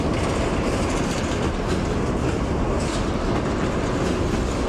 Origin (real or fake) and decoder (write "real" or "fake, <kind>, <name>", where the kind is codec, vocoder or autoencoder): real